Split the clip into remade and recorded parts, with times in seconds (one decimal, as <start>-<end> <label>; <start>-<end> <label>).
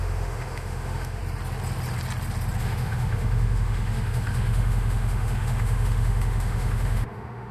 0.0-1.2 remade; 1.2-2.6 recorded; 2.6-7.5 remade